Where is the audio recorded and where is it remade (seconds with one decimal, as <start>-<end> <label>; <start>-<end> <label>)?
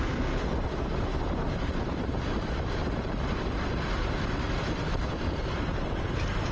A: 0.0-2.8 recorded; 2.8-6.1 remade; 6.1-6.5 recorded